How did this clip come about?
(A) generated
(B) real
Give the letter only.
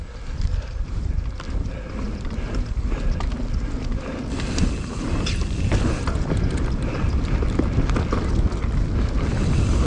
B